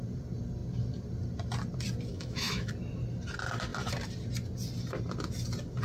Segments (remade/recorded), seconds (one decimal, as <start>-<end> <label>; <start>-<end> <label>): 0.0-2.1 recorded; 2.1-2.7 remade; 2.7-5.8 recorded